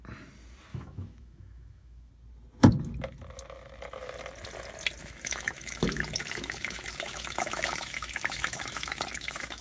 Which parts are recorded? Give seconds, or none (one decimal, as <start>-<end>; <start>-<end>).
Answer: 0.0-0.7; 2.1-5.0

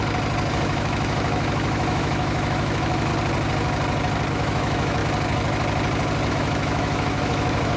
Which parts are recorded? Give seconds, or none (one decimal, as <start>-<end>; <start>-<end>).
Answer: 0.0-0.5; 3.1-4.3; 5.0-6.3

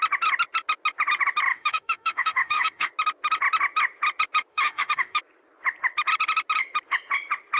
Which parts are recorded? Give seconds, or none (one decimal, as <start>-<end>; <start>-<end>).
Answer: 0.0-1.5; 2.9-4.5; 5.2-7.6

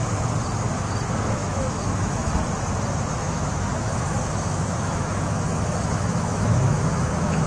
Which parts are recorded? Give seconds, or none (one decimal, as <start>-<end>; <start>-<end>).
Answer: 0.0-1.4; 2.3-3.2